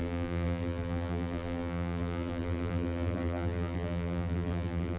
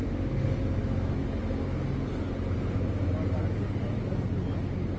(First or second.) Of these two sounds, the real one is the second